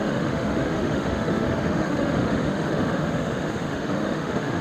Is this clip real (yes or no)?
no